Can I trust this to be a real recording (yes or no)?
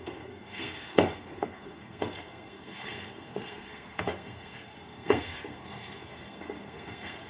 no